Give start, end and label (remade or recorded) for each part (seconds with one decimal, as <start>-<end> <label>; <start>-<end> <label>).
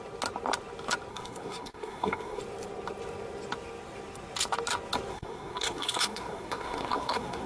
0.0-1.1 recorded; 1.1-2.4 remade; 2.4-5.1 recorded; 5.1-7.5 remade